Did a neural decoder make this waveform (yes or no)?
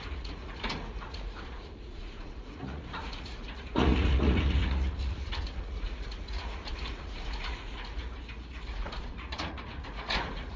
yes